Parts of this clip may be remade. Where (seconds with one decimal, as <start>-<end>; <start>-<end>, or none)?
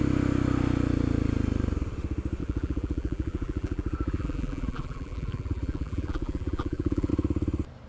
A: 2.4-7.1